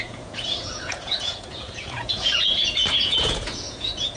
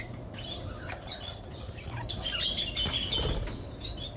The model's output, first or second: first